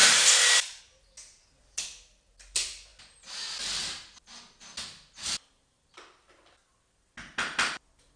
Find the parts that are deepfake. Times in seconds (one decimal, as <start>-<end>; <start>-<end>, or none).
none